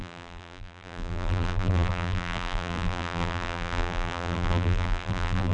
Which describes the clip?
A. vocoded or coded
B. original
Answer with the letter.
A